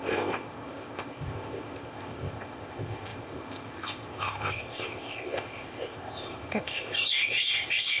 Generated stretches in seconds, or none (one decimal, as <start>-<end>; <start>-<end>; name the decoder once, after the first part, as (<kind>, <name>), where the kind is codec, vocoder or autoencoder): 0.0-8.0 (codec, ZipCodec)